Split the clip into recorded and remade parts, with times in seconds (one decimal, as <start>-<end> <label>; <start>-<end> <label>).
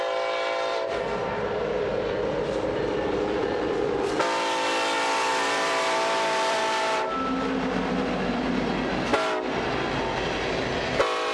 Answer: 0.0-0.7 recorded; 0.7-4.1 remade; 4.1-5.3 recorded; 5.3-6.6 remade; 6.6-11.3 recorded